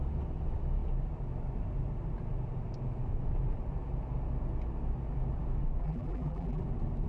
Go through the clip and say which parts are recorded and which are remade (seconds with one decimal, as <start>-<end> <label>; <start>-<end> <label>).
0.0-5.8 recorded; 5.8-6.6 remade; 6.6-7.1 recorded